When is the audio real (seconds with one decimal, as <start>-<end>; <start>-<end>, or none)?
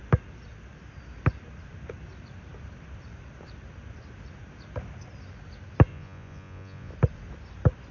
0.0-5.9; 6.9-7.9